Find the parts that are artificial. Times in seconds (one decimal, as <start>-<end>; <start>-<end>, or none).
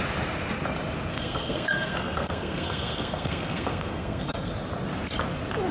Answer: 1.1-4.5